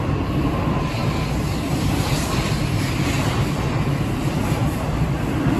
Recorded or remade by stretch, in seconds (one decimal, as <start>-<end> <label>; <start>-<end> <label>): 0.0-5.6 recorded